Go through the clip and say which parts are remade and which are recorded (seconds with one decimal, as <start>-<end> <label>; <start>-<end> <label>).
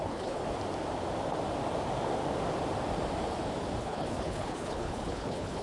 0.0-0.4 remade; 0.4-3.8 recorded; 3.8-5.6 remade